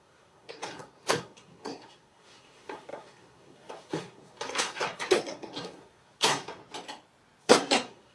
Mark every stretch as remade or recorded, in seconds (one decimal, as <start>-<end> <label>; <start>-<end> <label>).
0.0-6.6 remade; 6.6-7.4 recorded; 7.4-8.1 remade